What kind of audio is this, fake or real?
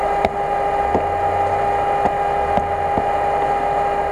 real